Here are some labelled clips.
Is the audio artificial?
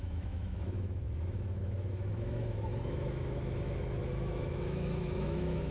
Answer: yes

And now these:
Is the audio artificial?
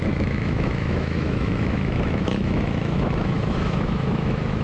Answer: yes